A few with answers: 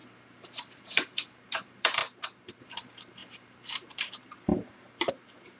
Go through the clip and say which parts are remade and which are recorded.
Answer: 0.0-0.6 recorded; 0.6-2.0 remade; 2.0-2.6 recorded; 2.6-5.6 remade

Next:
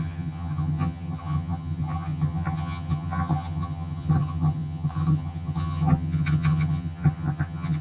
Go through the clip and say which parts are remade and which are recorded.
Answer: 0.0-7.8 remade

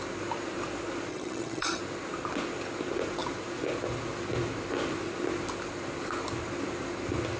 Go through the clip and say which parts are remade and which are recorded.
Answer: 0.0-1.1 recorded; 1.1-1.8 remade; 1.8-7.4 recorded

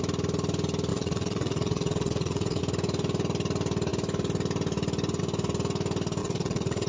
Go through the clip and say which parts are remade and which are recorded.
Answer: 0.0-0.9 recorded; 0.9-2.6 remade; 2.6-6.2 recorded; 6.2-6.9 remade